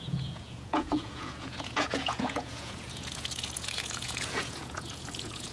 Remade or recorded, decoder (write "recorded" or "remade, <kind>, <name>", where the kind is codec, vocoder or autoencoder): remade, vocoder, Vocos